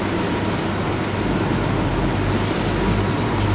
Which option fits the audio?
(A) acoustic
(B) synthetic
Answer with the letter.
A